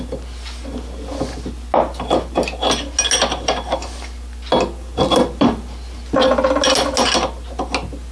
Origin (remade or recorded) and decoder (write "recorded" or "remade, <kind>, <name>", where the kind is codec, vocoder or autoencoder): recorded